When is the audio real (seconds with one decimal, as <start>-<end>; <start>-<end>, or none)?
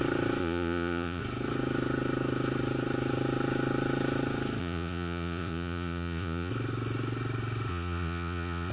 0.0-0.4; 1.2-4.6; 6.5-7.7